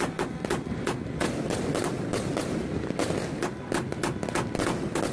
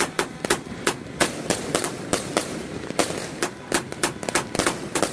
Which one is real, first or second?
first